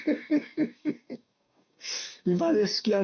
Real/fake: fake